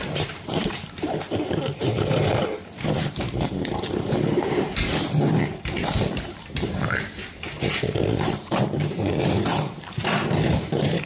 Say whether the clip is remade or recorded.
remade